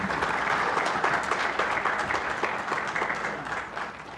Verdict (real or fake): real